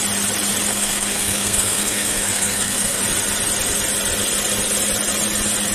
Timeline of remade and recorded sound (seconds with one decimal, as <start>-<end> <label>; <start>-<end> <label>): 0.0-0.7 recorded; 0.7-3.0 remade; 3.0-5.7 recorded